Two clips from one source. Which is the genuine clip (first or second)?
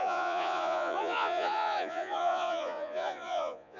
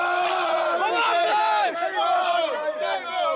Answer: second